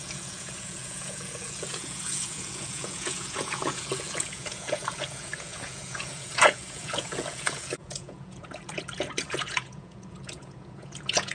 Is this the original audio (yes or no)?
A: no